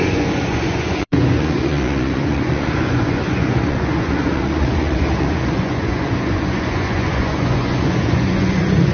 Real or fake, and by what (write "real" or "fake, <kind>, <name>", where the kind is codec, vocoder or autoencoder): fake, vocoder, Vocos